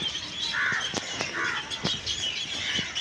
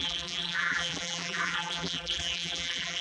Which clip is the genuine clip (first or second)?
first